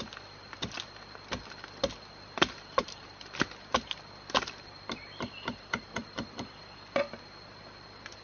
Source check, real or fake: real